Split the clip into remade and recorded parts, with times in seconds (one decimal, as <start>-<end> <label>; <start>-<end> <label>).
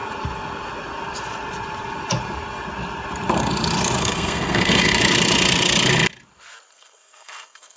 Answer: 0.0-4.0 recorded; 4.0-4.9 remade; 4.9-6.7 recorded; 6.7-7.8 remade